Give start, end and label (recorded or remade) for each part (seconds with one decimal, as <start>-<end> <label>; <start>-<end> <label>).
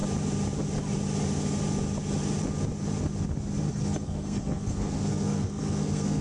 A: 0.0-3.7 recorded; 3.7-6.2 remade